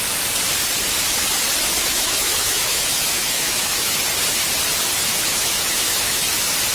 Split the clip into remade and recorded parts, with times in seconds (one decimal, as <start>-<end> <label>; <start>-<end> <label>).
0.0-1.8 recorded; 1.8-4.0 remade; 4.0-5.1 recorded; 5.1-6.3 remade; 6.3-6.7 recorded